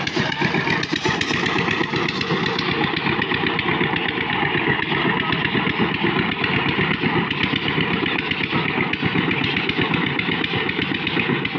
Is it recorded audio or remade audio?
recorded